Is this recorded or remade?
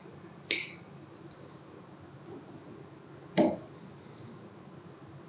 recorded